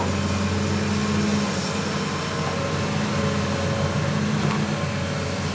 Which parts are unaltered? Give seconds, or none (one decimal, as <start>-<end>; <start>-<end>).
0.0-5.5